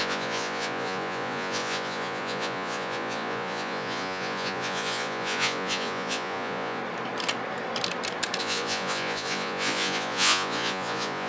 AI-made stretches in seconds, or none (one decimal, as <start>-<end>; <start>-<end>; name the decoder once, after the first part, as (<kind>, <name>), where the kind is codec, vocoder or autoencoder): 0.0-6.8 (vocoder, Vocos); 8.4-11.3